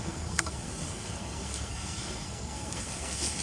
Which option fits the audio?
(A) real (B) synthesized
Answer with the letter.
B